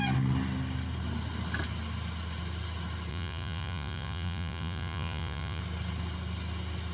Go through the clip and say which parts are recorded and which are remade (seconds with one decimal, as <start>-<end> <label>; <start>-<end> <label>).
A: 0.0-3.1 recorded; 3.1-5.6 remade; 5.6-6.9 recorded